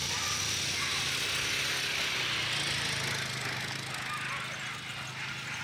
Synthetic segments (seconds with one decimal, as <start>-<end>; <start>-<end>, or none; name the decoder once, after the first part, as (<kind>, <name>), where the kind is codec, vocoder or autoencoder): none